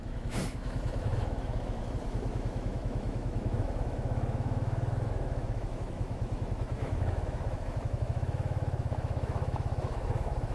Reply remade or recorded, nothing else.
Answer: remade